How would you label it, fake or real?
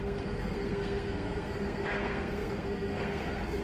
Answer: fake